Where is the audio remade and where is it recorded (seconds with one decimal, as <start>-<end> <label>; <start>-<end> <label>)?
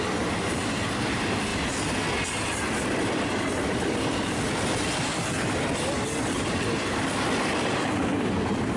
0.0-1.5 recorded; 1.5-5.1 remade; 5.1-7.5 recorded; 7.5-8.0 remade; 8.0-8.8 recorded